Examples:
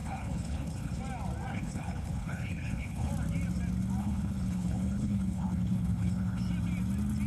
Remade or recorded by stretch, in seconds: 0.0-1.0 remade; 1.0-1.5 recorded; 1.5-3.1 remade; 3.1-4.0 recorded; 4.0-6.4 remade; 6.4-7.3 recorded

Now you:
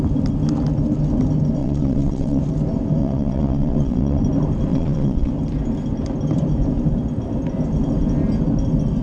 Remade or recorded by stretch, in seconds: 0.0-1.6 recorded; 1.6-2.4 remade; 2.4-3.0 recorded; 3.0-4.2 remade; 4.2-4.7 recorded; 4.7-5.3 remade; 5.3-9.0 recorded

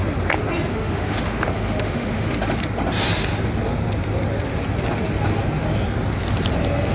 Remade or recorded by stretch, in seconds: 0.0-0.7 recorded; 0.7-2.4 remade; 2.4-6.9 recorded

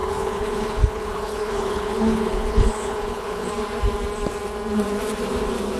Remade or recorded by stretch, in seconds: 0.0-3.5 remade; 3.5-5.8 recorded

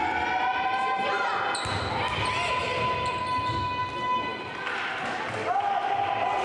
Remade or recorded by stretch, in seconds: 0.0-2.6 recorded; 2.6-3.2 remade; 3.2-6.4 recorded